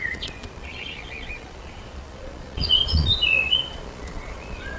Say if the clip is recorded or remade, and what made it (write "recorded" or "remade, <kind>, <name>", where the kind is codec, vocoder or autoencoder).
remade, vocoder, Vocos